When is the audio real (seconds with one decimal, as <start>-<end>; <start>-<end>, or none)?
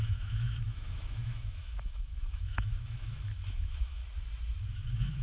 4.0-4.7